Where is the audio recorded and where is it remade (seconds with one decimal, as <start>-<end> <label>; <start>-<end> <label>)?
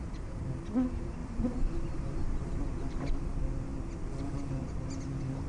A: 0.0-1.2 recorded; 1.2-3.1 remade; 3.1-5.5 recorded